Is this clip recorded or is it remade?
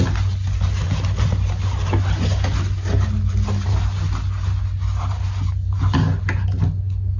recorded